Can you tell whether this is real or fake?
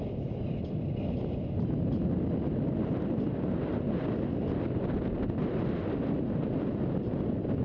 real